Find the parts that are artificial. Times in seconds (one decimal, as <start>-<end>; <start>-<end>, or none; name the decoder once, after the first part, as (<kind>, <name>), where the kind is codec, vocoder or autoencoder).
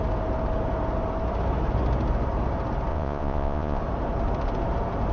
2.9-3.8 (vocoder, Vocos)